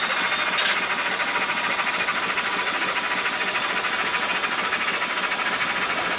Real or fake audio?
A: real